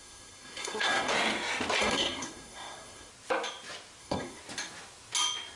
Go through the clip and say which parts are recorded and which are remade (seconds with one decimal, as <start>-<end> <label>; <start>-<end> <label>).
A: 0.0-1.1 remade; 1.1-1.8 recorded; 1.8-3.1 remade; 3.1-4.0 recorded; 4.0-4.4 remade; 4.4-5.6 recorded